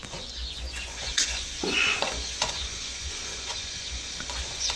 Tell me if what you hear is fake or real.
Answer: fake